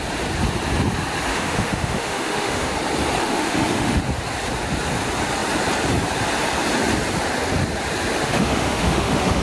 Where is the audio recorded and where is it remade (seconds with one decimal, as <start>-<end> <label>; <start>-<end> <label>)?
0.0-1.3 recorded; 1.3-2.7 remade; 2.7-3.2 recorded; 3.2-4.0 remade; 4.0-8.2 recorded; 8.2-9.4 remade